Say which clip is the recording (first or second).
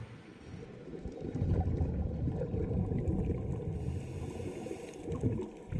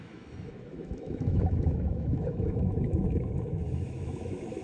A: first